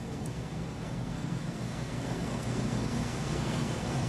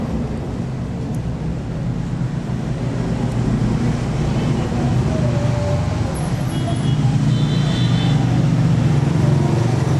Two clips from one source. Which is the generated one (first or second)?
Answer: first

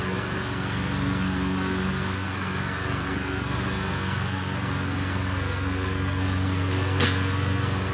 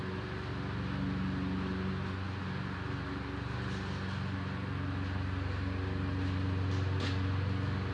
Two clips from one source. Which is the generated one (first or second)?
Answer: first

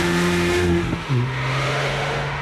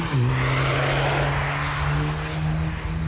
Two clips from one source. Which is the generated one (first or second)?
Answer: first